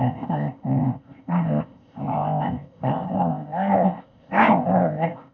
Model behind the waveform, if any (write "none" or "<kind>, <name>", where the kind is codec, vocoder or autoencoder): codec, ZipCodec